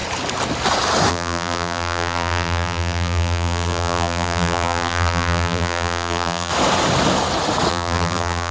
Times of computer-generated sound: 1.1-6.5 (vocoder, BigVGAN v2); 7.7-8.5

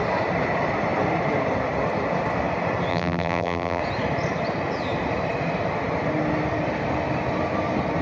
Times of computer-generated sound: 2.9-3.8 (vocoder, BigVGAN v2)

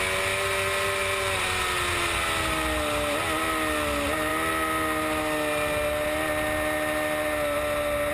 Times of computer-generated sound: none

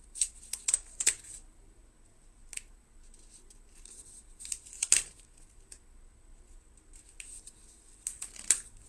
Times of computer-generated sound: none